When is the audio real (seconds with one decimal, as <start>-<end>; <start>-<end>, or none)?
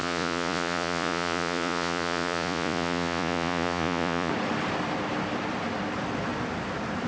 4.3-7.1